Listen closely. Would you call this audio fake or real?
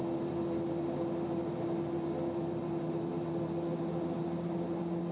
real